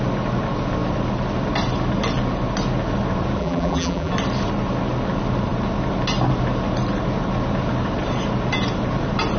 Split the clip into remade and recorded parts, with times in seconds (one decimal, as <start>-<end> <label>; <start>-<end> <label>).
0.0-3.4 recorded; 3.4-4.1 remade; 4.1-9.4 recorded